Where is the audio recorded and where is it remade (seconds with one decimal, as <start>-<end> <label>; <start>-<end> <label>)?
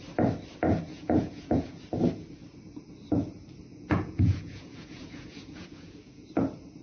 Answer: 0.0-0.9 recorded; 0.9-1.8 remade; 1.8-3.7 recorded; 3.7-6.3 remade; 6.3-6.8 recorded